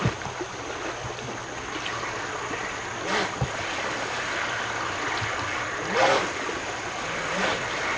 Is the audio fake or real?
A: real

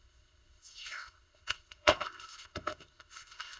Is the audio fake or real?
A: fake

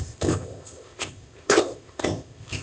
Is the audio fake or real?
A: fake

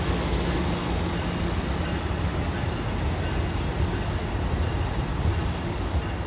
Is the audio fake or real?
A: real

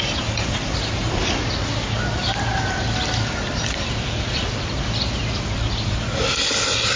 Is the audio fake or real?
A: real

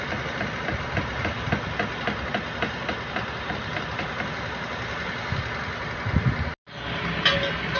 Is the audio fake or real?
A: real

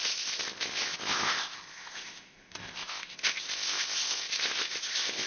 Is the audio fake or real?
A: fake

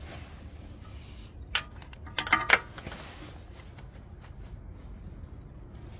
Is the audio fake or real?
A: real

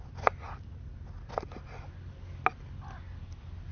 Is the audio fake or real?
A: real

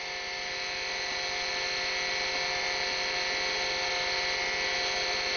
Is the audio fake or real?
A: real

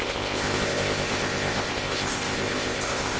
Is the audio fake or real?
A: fake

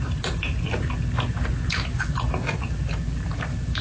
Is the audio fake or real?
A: real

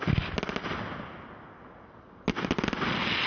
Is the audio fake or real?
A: real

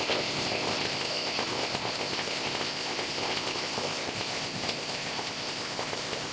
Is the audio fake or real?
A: fake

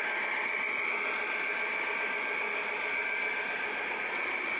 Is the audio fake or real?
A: real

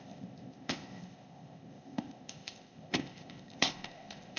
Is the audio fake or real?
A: fake